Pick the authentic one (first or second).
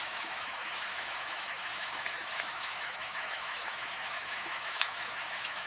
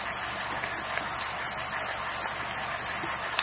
second